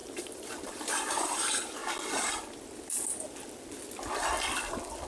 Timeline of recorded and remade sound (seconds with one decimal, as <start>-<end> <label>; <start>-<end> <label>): 0.0-1.8 remade; 1.8-5.1 recorded